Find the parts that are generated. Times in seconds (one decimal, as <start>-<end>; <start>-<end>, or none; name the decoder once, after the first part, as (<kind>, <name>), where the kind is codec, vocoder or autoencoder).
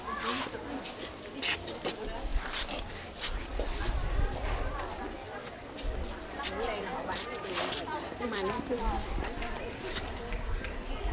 2.3-5.0 (vocoder, BigVGAN v2); 7.9-10.7